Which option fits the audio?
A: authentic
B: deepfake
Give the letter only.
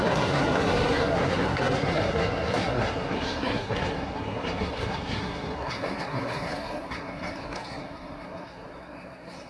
B